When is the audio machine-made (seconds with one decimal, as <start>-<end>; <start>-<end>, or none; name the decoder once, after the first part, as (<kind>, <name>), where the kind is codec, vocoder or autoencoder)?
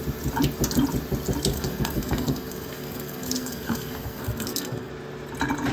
1.5-4.9 (codec, SNAC)